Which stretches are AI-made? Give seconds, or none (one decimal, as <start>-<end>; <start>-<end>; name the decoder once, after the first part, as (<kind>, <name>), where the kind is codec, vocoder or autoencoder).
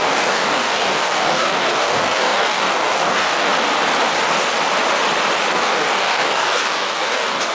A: 0.0-3.5 (codec, DAC); 5.5-7.5